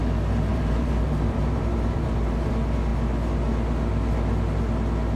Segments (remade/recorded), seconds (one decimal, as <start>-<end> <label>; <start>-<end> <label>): 0.0-0.5 recorded; 0.5-2.5 remade; 2.5-5.2 recorded